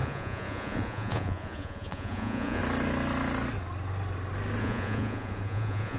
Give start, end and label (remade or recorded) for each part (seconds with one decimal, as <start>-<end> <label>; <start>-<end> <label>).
0.0-2.6 remade; 2.6-4.6 recorded; 4.6-6.0 remade